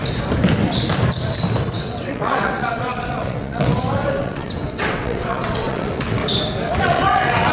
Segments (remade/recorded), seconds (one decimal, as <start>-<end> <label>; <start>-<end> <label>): 0.0-1.7 recorded; 1.7-6.2 remade; 6.2-6.8 recorded; 6.8-7.5 remade